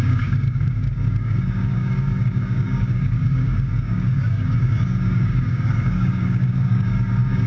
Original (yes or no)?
no